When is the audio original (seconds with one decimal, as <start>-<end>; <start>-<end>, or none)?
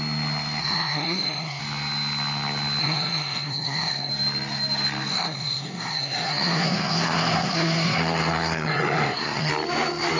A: 0.0-0.6; 1.6-2.8; 4.1-5.1; 9.5-10.2